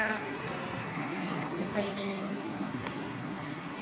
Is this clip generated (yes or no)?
yes